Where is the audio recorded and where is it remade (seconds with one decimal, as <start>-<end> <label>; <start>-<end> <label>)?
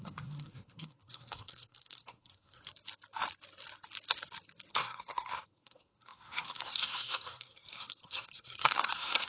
0.0-2.6 remade; 2.6-4.7 recorded; 4.7-9.3 remade